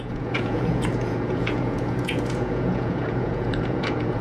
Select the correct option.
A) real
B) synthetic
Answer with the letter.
B